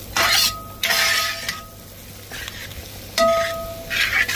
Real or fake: real